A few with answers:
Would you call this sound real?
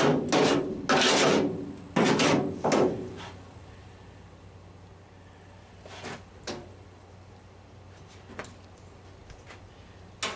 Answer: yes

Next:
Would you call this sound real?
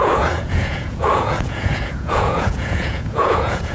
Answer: no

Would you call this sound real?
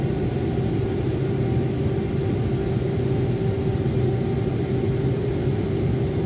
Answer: yes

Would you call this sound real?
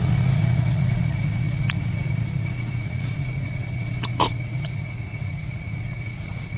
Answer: no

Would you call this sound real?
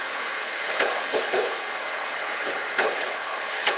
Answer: no